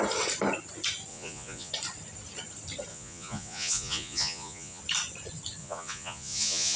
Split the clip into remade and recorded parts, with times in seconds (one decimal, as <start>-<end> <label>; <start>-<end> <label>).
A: 0.0-1.1 recorded; 1.1-1.7 remade; 1.7-2.9 recorded; 2.9-4.8 remade; 4.8-5.6 recorded; 5.6-6.8 remade